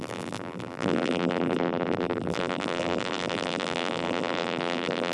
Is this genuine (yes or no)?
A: no